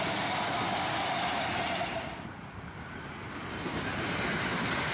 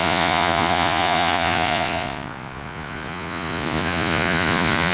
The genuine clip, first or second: first